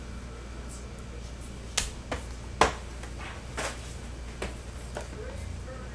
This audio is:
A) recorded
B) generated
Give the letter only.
A